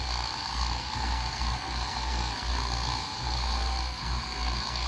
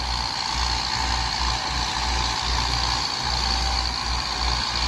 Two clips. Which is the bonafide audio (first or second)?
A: second